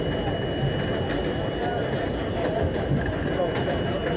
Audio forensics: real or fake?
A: real